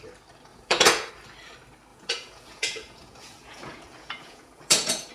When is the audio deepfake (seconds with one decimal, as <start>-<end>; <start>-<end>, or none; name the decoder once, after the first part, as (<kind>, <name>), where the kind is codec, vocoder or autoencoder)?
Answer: 0.5-1.1 (vocoder, Vocos); 1.9-5.1